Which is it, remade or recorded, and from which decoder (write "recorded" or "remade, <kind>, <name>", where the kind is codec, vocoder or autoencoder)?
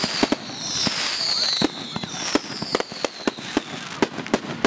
recorded